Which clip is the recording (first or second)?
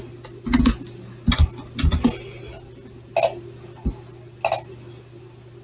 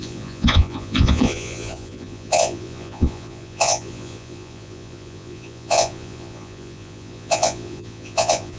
first